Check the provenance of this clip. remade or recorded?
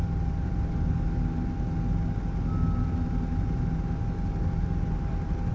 recorded